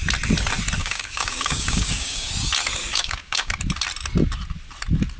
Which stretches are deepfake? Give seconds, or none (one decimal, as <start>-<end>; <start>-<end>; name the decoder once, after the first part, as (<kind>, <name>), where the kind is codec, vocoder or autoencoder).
0.8-2.3 (codec, DAC); 2.9-3.6